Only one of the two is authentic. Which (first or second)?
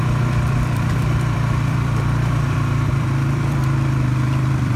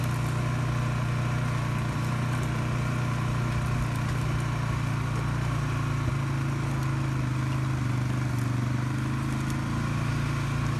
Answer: second